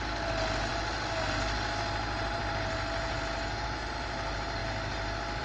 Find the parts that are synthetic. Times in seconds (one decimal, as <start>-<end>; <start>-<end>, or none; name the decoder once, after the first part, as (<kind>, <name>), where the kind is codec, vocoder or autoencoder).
none